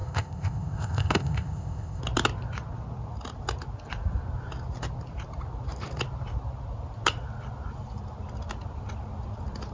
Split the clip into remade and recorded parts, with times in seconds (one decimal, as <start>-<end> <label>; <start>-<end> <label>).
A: 0.0-2.0 remade; 2.0-9.7 recorded